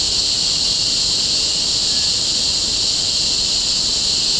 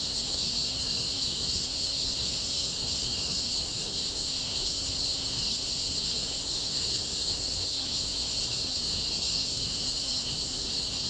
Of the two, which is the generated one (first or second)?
second